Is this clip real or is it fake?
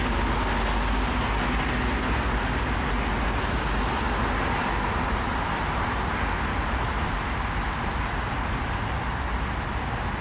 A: real